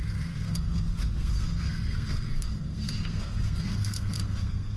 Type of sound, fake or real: fake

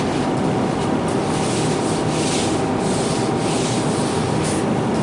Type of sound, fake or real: real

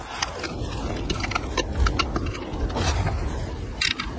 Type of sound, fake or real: real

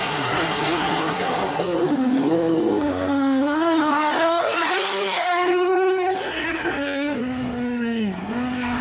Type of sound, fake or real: fake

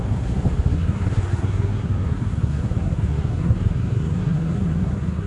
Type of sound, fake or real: fake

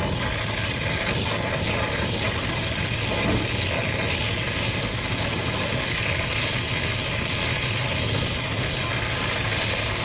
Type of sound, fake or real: real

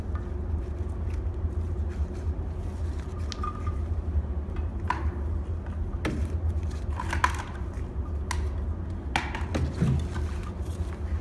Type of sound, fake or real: real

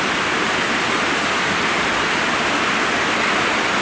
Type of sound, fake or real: real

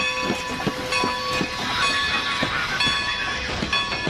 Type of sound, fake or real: real